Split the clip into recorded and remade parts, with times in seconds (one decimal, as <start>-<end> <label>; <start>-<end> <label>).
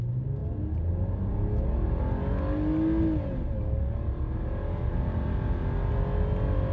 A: 0.0-6.7 recorded